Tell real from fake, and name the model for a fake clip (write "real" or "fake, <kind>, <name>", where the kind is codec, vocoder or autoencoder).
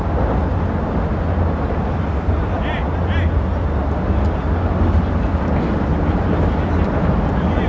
real